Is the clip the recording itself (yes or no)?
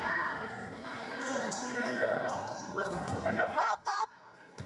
no